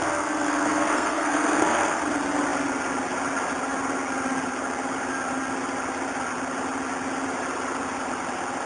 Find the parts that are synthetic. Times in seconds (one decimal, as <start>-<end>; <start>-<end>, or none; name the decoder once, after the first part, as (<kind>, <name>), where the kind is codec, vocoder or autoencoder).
0.0-2.0 (codec, SNAC)